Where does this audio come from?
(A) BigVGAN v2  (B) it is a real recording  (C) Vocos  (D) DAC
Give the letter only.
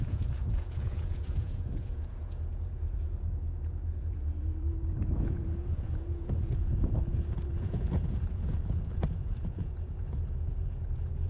C